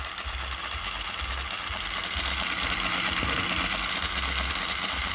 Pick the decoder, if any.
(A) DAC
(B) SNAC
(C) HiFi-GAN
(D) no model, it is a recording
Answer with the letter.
D